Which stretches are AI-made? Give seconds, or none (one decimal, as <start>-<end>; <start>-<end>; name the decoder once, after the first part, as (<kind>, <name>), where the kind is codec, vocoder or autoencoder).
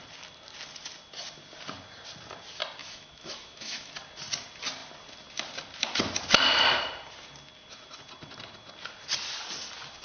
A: 2.8-3.9 (autoencoder, DAC-VAE)